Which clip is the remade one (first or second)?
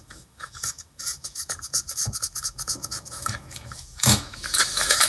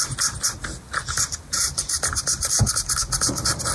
first